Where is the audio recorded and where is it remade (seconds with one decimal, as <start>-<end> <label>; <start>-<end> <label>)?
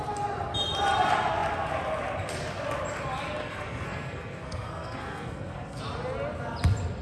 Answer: 0.0-3.4 recorded; 3.4-5.8 remade; 5.8-7.0 recorded